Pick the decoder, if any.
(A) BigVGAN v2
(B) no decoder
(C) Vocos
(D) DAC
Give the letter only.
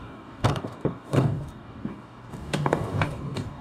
D